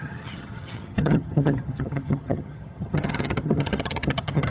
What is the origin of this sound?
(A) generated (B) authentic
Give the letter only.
A